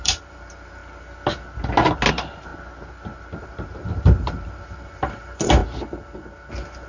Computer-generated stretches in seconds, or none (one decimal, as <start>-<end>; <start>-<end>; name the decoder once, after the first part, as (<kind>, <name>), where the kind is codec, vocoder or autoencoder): 0.0-0.8 (vocoder, BigVGAN v2); 2.1-2.5; 3.4-5.6; 6.5-6.9